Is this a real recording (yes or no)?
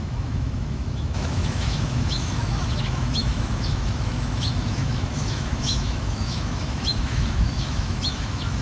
no